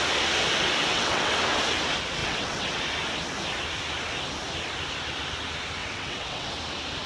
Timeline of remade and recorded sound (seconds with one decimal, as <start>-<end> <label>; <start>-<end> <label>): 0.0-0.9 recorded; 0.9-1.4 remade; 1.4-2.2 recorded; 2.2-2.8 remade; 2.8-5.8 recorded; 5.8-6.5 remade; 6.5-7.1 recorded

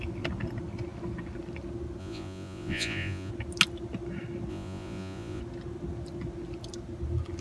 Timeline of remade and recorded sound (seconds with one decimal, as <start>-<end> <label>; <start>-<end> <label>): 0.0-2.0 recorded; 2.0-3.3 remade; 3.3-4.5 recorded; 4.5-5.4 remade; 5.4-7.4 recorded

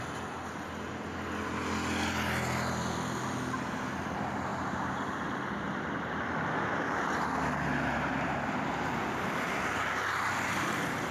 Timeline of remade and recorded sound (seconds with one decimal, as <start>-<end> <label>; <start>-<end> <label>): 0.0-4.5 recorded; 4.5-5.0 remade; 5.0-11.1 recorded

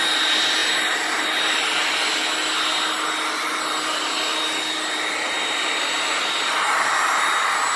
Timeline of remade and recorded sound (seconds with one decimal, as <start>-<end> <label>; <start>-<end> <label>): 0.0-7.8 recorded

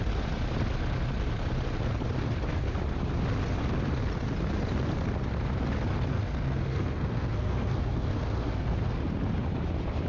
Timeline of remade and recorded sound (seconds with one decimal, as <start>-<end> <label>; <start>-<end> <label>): 0.0-6.1 recorded; 6.1-8.9 remade; 8.9-10.1 recorded

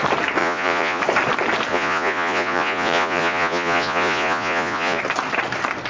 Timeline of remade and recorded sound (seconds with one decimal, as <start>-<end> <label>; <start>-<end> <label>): 0.0-0.4 recorded; 0.4-1.0 remade; 1.0-1.7 recorded; 1.7-5.0 remade; 5.0-5.9 recorded